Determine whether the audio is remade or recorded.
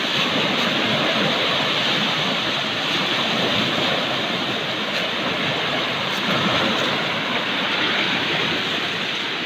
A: recorded